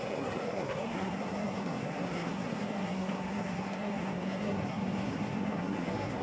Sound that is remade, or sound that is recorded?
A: remade